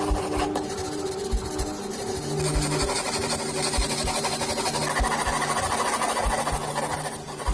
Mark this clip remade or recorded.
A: recorded